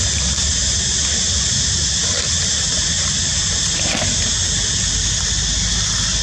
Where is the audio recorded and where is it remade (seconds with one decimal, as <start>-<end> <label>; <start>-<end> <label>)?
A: 0.0-6.2 recorded